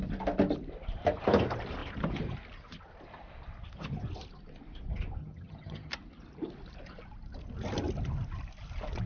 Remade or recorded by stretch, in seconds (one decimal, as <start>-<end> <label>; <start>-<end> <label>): 0.0-5.2 recorded; 5.2-5.9 remade; 5.9-9.1 recorded